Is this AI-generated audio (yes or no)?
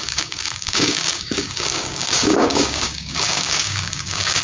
yes